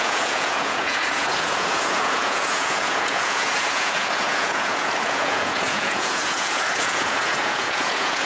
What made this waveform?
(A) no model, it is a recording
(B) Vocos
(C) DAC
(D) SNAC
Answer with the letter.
B